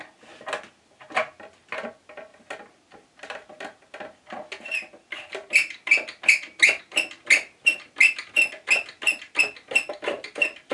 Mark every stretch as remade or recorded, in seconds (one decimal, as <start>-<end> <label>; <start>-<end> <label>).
0.0-10.7 recorded